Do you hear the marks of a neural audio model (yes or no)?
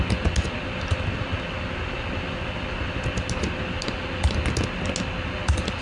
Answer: no